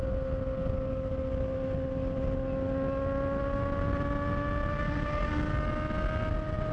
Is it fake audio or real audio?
real